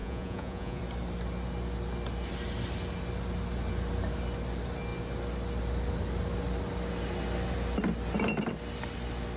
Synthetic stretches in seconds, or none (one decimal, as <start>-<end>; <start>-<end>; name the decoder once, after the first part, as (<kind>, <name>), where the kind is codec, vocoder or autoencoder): 0.0-0.8 (vocoder, Vocos)